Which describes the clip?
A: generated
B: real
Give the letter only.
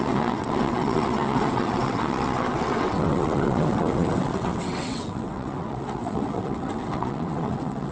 A